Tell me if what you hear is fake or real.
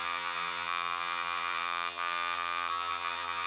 fake